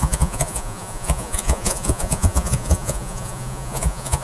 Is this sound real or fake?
fake